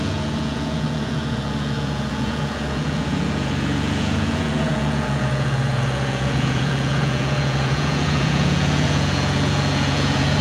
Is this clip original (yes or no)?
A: no